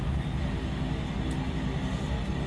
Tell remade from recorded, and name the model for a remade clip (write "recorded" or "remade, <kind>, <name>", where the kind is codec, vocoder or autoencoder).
recorded